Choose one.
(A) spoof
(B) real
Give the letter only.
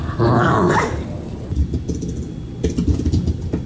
B